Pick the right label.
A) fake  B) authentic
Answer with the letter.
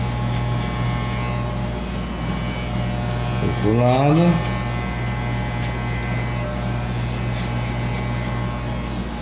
B